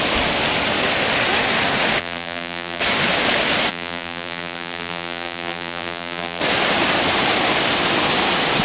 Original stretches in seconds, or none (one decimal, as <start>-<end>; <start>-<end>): 0.0-2.0; 2.8-3.7; 6.4-8.6

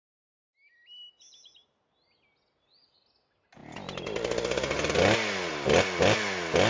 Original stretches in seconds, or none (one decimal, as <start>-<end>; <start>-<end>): 0.0-6.7